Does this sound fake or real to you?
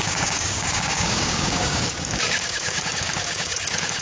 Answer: fake